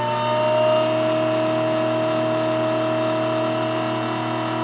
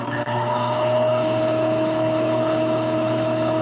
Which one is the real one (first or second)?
first